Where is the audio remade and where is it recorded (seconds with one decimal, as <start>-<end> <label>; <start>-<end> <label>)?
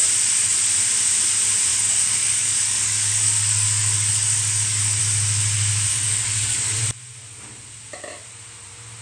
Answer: 0.0-1.7 recorded; 1.7-5.0 remade; 5.0-5.9 recorded; 5.9-6.8 remade; 6.8-9.0 recorded